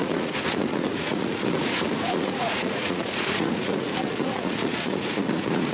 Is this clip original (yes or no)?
no